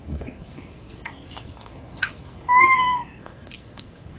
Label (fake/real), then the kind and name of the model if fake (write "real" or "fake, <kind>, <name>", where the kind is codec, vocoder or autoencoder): fake, codec, SNAC